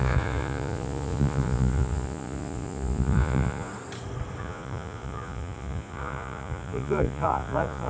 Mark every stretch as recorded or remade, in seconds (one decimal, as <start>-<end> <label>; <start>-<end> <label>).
0.0-3.7 remade; 3.7-4.4 recorded; 4.4-7.9 remade